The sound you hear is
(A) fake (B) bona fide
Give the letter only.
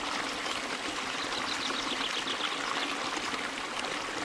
B